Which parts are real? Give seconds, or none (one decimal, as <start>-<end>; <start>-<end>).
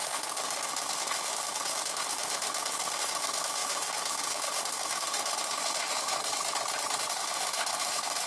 6.2-7.1